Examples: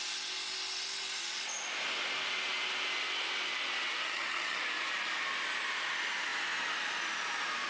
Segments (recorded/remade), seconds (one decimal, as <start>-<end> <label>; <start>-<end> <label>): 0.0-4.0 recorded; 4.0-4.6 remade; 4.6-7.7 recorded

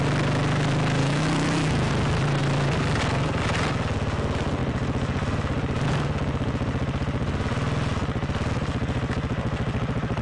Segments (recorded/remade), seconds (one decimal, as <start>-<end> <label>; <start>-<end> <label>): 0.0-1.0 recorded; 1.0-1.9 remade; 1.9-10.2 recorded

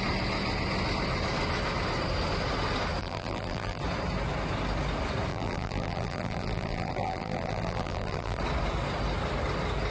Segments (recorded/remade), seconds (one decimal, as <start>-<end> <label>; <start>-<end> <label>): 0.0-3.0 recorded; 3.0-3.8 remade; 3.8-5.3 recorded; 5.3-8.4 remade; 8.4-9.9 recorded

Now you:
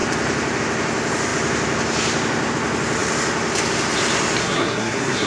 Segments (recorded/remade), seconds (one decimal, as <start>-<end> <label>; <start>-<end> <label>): 0.0-4.4 recorded; 4.4-5.3 remade

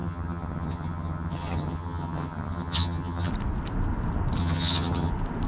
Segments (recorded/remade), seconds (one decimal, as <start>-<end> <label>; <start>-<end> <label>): 0.0-3.3 remade; 3.3-4.4 recorded; 4.4-5.1 remade; 5.1-5.5 recorded

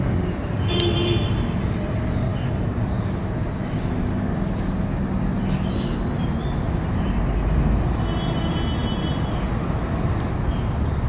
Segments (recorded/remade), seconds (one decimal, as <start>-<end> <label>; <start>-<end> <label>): 0.0-2.3 recorded; 2.3-2.9 remade; 2.9-11.1 recorded